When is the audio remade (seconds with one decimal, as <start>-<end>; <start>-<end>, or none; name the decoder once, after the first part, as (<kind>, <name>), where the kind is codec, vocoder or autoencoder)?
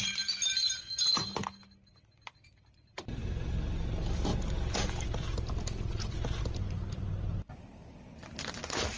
0.0-1.1 (vocoder, BigVGAN v2); 1.9-9.0